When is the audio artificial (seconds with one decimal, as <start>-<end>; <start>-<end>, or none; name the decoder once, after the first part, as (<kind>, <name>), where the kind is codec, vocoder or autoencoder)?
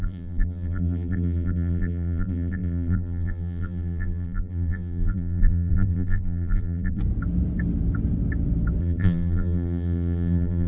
0.0-7.0 (vocoder, BigVGAN v2); 8.8-10.7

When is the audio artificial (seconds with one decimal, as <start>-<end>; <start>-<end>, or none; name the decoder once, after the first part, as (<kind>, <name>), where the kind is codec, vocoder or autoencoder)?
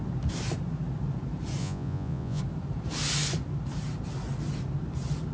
1.6-2.4 (vocoder, Vocos)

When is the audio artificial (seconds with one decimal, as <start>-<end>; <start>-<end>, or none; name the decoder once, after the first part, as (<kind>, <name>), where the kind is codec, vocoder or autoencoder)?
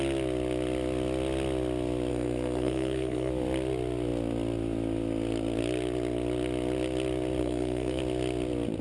2.1-3.3 (codec, SNAC); 7.4-8.0